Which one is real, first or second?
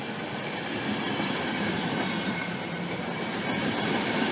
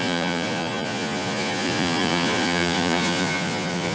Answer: first